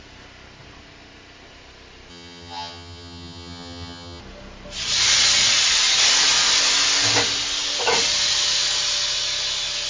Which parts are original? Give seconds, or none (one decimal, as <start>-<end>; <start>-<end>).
0.0-2.1; 4.2-9.9

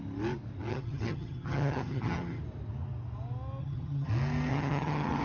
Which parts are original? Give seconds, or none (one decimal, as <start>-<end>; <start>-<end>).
0.0-0.7; 2.4-3.6; 4.1-4.5

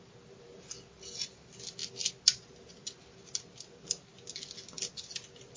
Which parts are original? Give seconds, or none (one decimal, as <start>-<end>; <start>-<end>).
0.0-5.6

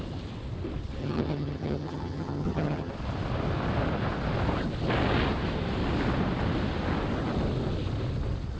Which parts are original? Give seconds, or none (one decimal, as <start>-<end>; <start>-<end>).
0.0-1.0; 2.9-8.6